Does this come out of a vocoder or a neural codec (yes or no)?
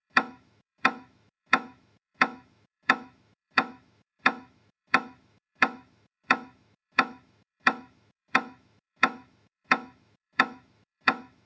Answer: yes